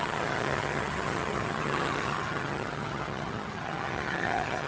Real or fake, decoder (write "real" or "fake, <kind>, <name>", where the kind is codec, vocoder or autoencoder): fake, vocoder, HiFi-GAN